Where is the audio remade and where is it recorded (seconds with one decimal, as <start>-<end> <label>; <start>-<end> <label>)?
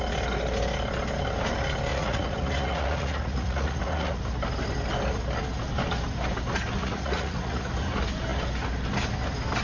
0.0-1.9 recorded; 1.9-4.2 remade; 4.2-6.8 recorded; 6.8-7.7 remade; 7.7-9.6 recorded